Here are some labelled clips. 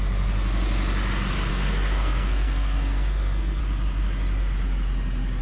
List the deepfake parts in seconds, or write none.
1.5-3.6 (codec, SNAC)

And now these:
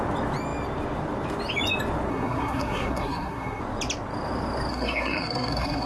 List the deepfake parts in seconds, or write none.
2.1-3.6 (codec, SNAC); 4.7-5.9

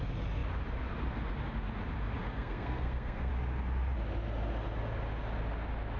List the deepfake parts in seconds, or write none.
2.2-3.3 (codec, SNAC)

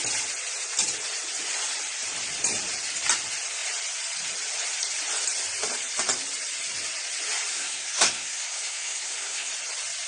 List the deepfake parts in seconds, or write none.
7.5-9.5 (codec, SNAC)

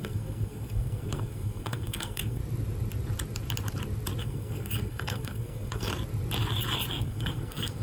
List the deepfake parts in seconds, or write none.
0.0-2.4 (codec, SNAC); 4.2-5.9; 6.9-7.8

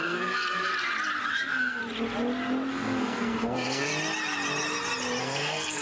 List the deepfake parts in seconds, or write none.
0.0-0.7 (codec, SNAC); 1.3-1.8; 2.7-3.9; 5.2-5.8